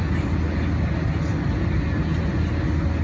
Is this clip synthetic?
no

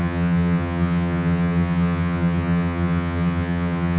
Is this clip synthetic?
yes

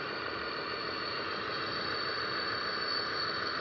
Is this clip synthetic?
no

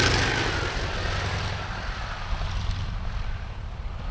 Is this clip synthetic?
no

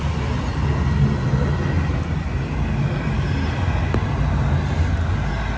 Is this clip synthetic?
no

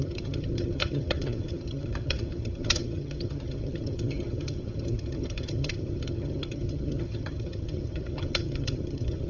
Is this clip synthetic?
yes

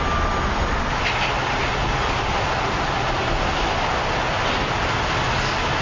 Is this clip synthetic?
no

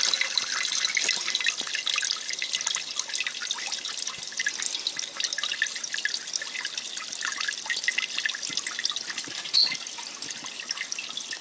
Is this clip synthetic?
no